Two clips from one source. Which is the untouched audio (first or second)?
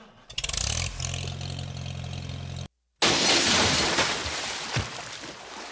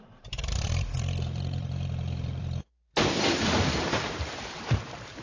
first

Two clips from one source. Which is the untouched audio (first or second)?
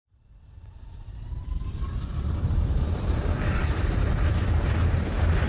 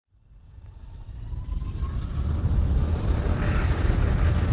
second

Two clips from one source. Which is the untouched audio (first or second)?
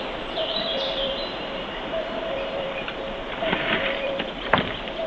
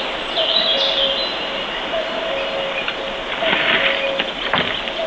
second